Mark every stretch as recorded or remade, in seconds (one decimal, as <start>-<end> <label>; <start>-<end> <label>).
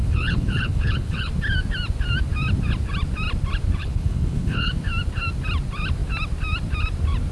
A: 0.0-1.3 remade; 1.3-3.8 recorded; 3.8-4.7 remade; 4.7-7.3 recorded